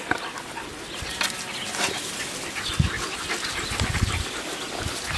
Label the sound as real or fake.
real